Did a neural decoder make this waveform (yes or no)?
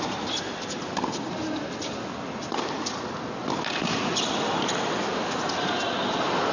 no